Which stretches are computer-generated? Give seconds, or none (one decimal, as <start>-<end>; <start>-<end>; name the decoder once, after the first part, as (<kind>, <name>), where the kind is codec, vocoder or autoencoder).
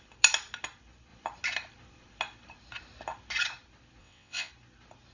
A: 4.0-4.5 (vocoder, WaveNeXt)